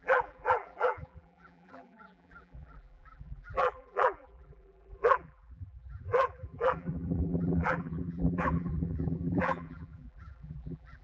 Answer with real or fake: fake